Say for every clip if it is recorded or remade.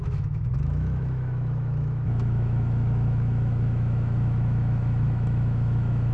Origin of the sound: remade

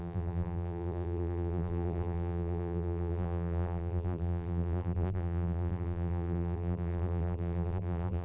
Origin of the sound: remade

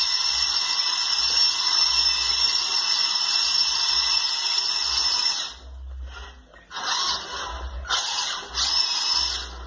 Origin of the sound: recorded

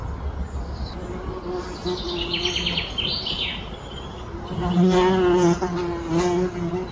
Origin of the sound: recorded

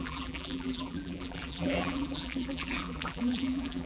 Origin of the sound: remade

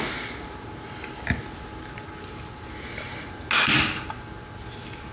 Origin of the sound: recorded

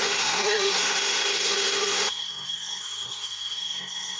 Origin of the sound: remade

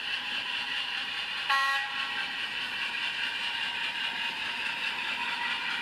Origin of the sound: remade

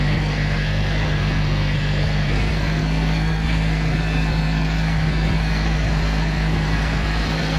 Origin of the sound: remade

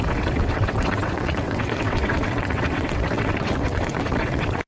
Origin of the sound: remade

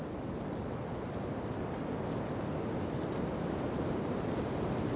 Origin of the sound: recorded